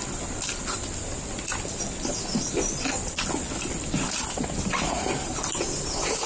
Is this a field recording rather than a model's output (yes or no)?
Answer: yes